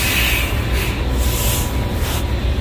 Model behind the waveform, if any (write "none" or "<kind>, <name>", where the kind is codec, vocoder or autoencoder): none